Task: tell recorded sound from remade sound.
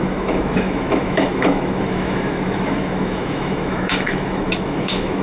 remade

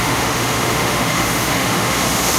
remade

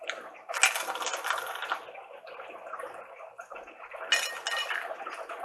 recorded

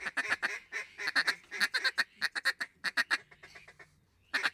recorded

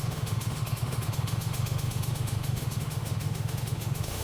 remade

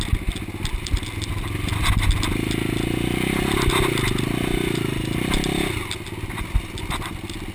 recorded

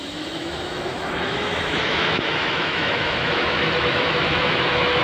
remade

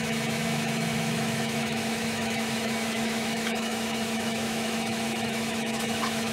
remade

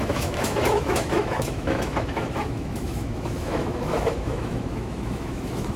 remade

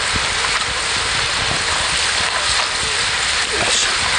recorded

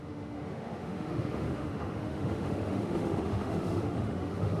remade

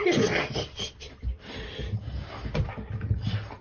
recorded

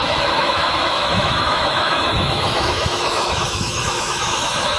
remade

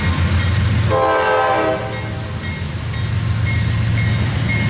recorded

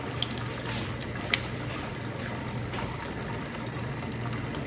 recorded